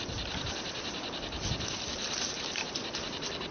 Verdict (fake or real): real